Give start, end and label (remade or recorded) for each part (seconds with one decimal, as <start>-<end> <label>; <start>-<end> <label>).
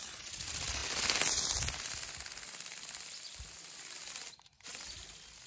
0.0-5.5 recorded